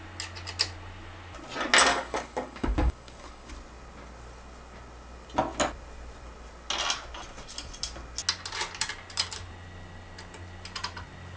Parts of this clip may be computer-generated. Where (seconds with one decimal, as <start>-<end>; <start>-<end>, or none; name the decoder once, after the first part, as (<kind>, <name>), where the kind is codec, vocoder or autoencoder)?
1.9-3.5 (codec, DAC)